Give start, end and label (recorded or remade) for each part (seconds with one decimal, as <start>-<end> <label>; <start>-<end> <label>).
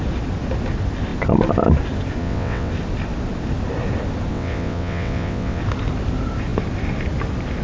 0.0-2.2 recorded; 2.2-2.7 remade; 2.7-4.3 recorded; 4.3-5.6 remade; 5.6-7.6 recorded